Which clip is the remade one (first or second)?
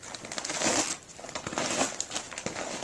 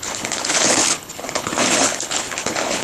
second